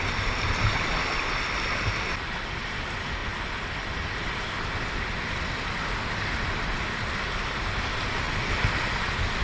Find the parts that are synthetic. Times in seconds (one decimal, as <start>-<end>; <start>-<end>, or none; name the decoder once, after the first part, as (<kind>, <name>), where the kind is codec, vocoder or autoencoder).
none